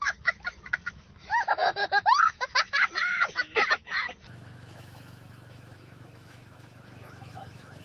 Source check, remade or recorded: remade